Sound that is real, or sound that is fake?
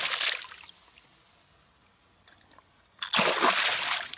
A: real